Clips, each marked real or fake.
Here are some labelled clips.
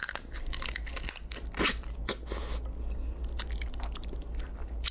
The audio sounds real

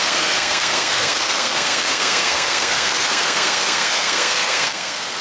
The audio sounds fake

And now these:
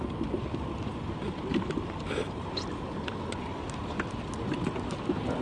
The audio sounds real